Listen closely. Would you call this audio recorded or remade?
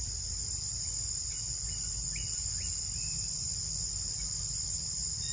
recorded